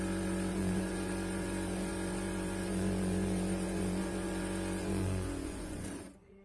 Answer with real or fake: fake